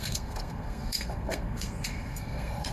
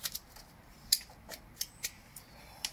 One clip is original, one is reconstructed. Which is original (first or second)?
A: second